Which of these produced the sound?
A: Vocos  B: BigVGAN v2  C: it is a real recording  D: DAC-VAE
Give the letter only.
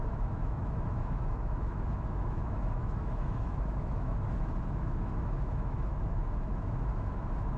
D